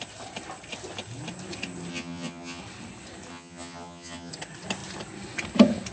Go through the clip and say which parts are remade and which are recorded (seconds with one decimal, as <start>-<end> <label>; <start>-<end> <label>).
0.0-1.9 recorded; 1.9-2.6 remade; 2.6-3.3 recorded; 3.3-4.3 remade; 4.3-5.9 recorded